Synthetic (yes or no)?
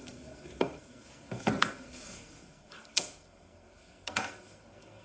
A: yes